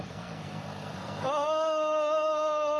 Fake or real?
fake